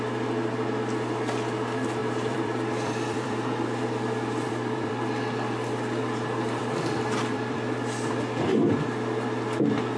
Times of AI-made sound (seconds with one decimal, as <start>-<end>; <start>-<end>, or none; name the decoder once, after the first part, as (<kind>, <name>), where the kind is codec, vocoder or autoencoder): 2.0-4.9 (vocoder, BigVGAN v2); 6.6-8.1